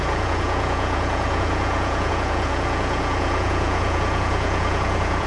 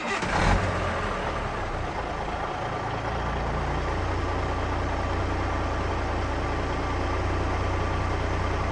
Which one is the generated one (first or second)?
first